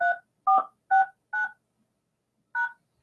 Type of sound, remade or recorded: recorded